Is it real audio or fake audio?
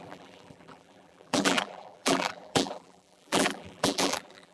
fake